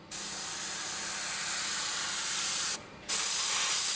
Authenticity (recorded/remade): recorded